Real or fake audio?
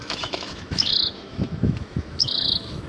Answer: fake